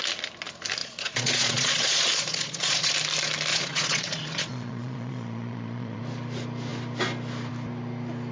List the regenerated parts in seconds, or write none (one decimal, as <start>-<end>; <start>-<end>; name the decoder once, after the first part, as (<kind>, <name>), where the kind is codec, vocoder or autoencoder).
0.8-2.9 (vocoder, Vocos); 3.5-6.0